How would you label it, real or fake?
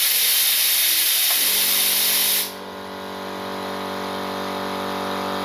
real